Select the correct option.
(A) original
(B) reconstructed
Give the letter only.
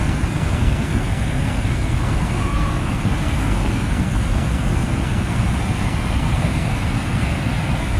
B